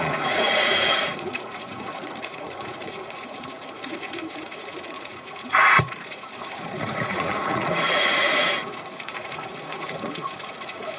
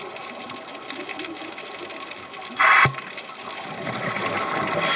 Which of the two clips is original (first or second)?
second